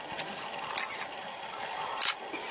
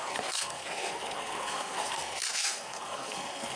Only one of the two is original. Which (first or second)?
first